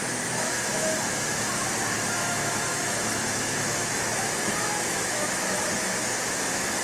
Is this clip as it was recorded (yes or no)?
no